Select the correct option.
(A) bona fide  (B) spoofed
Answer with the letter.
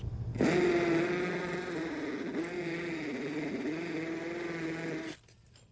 A